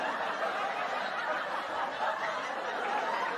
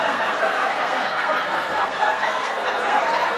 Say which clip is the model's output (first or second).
second